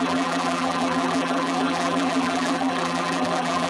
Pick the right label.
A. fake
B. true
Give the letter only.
A